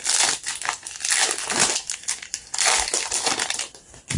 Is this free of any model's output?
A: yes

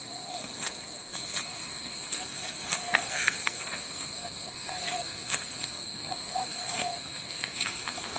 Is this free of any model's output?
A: no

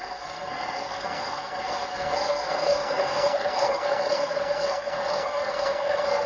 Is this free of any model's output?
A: no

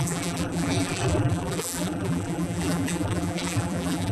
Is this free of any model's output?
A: no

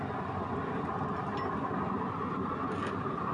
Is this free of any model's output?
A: yes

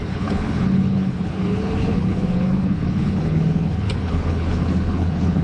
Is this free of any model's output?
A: no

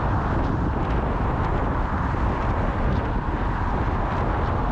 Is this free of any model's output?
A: yes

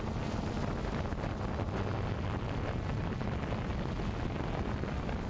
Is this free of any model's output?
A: yes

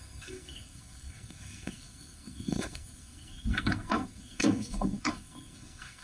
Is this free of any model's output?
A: no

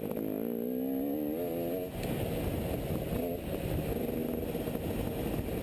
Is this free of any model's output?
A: yes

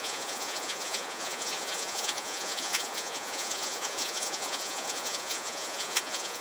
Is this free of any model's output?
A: no